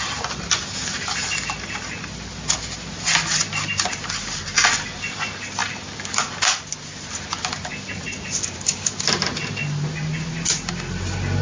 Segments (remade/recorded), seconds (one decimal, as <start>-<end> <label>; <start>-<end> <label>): 0.0-11.4 recorded

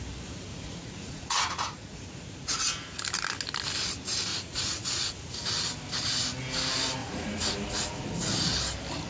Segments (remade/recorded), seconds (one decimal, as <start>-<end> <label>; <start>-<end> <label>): 0.0-0.5 recorded; 0.5-3.0 remade; 3.0-4.3 recorded; 4.3-5.4 remade; 5.4-7.0 recorded; 7.0-7.5 remade; 7.5-9.1 recorded

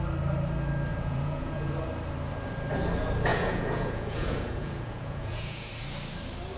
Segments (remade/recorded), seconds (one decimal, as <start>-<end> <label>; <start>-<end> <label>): 0.0-0.9 recorded; 0.9-1.7 remade; 1.7-3.3 recorded; 3.3-5.7 remade; 5.7-6.6 recorded

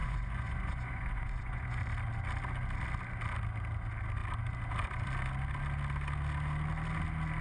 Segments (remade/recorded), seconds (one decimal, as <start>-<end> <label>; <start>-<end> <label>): 0.0-1.8 remade; 1.8-7.4 recorded

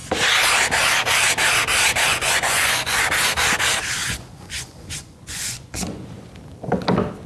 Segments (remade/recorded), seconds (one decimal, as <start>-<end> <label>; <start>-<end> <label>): 0.0-2.1 recorded; 2.1-3.0 remade; 3.0-4.0 recorded; 4.0-6.3 remade; 6.3-7.3 recorded

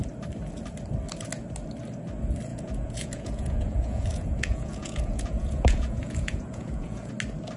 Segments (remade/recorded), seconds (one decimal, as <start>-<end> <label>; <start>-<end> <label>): 0.0-2.5 recorded; 2.5-7.1 remade; 7.1-7.6 recorded